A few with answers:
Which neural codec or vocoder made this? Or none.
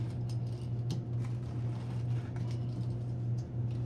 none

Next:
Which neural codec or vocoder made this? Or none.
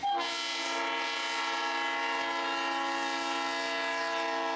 none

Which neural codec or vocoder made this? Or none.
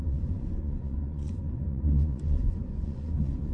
vocoder, Vocos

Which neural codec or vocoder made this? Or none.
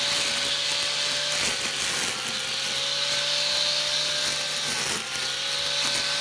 none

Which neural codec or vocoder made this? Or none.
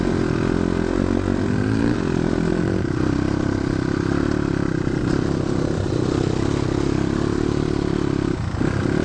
none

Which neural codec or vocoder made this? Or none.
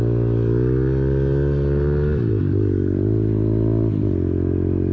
none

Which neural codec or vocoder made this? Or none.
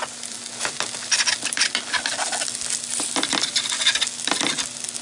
none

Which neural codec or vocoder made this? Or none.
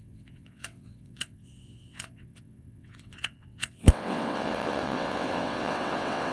vocoder, WaveNeXt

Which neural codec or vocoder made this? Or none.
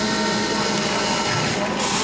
none